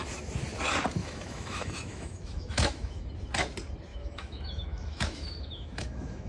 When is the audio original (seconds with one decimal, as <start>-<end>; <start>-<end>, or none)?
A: 0.0-1.0; 3.1-3.9